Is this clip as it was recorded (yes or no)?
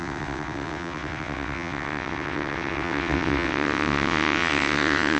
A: no